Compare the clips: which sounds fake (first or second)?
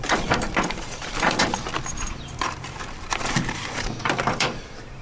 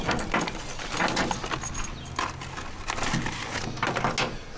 first